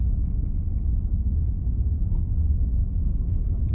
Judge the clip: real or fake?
real